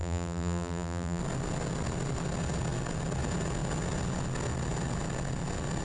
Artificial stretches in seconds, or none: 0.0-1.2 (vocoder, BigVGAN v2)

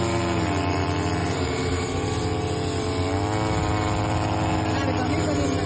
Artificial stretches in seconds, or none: 1.2-2.2 (vocoder, BigVGAN v2)

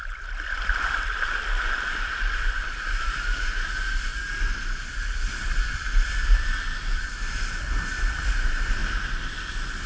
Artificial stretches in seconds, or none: 0.0-4.1 (vocoder, BigVGAN v2); 5.0-8.8; 9.4-9.9

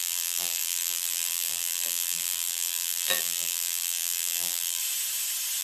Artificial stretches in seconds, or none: 0.0-4.8 (vocoder, BigVGAN v2)

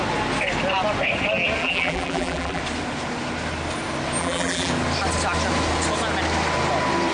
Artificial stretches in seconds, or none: 1.6-2.6 (vocoder, BigVGAN v2); 4.2-4.7

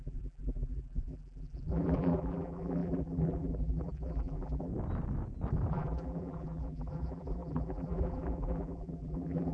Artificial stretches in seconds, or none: 0.0-4.7 (vocoder, BigVGAN v2); 5.7-9.5

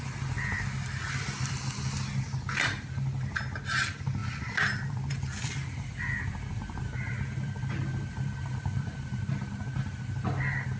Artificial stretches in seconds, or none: 4.2-9.2 (vocoder, BigVGAN v2)

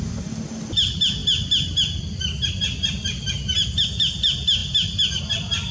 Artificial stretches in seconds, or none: none